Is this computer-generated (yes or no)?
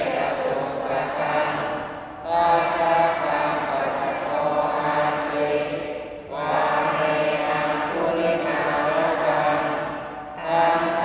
no